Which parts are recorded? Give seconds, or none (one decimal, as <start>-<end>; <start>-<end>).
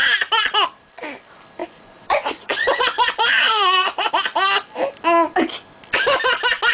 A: 0.0-1.6; 4.1-6.7